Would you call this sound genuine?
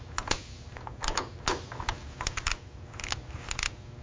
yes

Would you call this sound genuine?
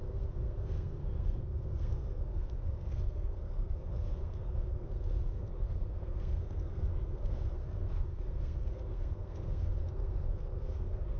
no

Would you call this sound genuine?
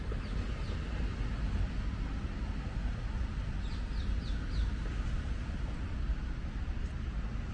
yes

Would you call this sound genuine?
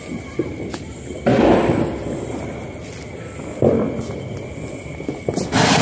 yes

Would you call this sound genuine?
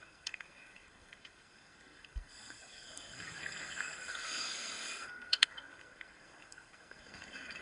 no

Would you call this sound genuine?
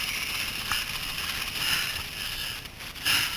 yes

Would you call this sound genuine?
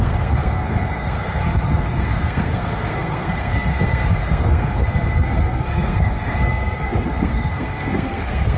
no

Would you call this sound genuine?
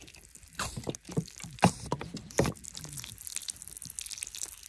yes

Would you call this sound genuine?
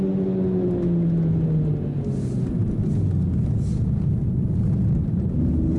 yes